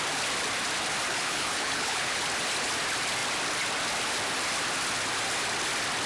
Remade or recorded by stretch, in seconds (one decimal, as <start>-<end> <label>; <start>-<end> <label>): 0.0-1.1 recorded; 1.1-2.2 remade; 2.2-6.1 recorded